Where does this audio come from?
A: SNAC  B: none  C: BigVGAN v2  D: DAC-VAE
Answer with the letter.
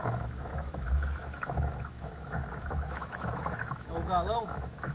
D